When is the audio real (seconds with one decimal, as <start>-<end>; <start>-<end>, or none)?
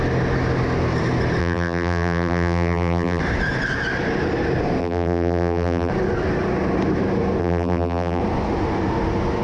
0.0-1.4; 3.2-4.8; 5.9-7.4; 8.2-9.4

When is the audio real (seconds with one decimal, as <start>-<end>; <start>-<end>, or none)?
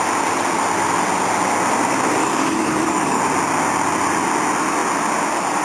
0.0-2.2; 3.2-5.6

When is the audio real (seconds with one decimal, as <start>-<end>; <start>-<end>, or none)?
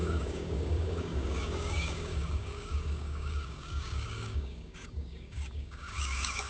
none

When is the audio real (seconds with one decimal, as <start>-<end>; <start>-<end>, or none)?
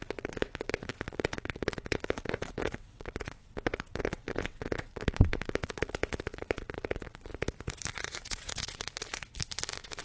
7.3-7.9; 8.9-10.0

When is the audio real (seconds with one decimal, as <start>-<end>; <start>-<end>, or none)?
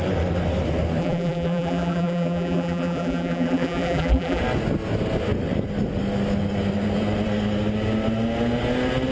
0.0-1.0; 4.4-9.1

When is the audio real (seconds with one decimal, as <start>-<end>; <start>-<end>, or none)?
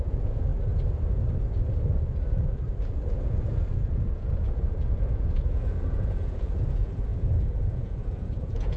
0.5-3.2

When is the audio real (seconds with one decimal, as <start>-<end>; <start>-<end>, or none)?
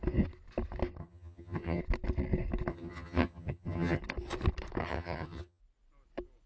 0.0-1.0; 1.8-2.7; 4.0-4.8; 5.6-6.5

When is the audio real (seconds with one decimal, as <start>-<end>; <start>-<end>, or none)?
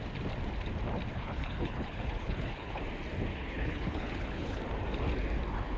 0.0-1.1; 2.8-3.3; 4.6-5.8